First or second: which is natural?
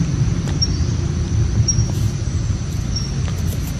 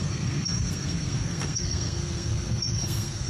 first